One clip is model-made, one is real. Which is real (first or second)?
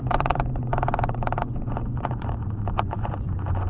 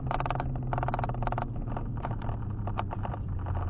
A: second